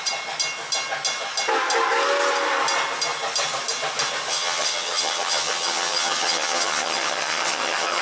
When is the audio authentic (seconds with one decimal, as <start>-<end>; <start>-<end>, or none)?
0.0-4.3